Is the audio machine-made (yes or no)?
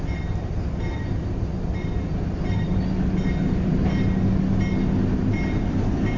no